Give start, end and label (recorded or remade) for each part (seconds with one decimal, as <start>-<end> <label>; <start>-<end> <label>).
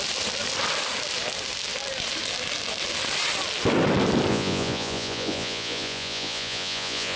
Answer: 0.0-4.3 recorded; 4.3-7.2 remade